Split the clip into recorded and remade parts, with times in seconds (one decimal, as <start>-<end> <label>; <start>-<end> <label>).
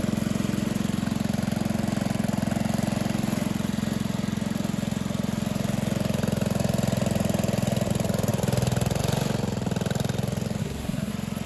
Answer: 0.0-10.6 recorded; 10.6-11.1 remade; 11.1-11.5 recorded